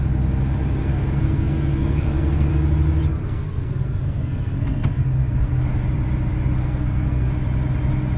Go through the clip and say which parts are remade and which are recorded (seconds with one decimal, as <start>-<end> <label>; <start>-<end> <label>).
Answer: 0.0-0.8 recorded; 0.8-2.5 remade; 2.5-3.2 recorded; 3.2-5.6 remade; 5.6-6.6 recorded; 6.6-7.3 remade; 7.3-8.2 recorded